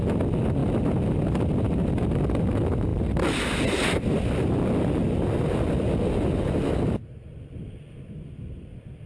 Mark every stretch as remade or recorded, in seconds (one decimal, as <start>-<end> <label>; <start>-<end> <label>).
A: 0.0-9.1 recorded